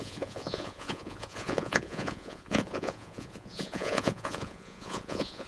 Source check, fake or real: fake